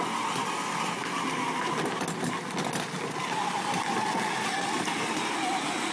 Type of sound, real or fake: real